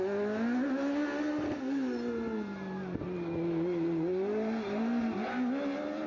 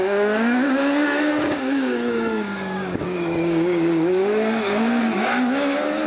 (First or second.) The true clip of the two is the first